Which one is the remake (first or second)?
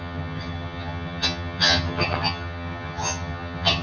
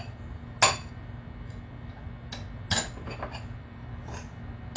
first